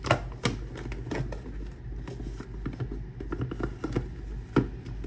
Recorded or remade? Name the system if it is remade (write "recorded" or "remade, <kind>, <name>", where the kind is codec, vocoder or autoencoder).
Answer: recorded